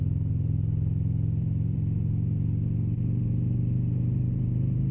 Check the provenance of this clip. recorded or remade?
remade